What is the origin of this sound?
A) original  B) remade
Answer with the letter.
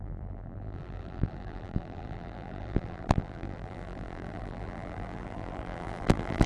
B